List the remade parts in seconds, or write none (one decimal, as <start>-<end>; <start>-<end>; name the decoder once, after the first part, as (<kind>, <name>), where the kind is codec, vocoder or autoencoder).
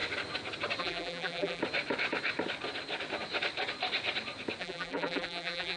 0.8-1.6 (vocoder, BigVGAN v2); 4.6-5.8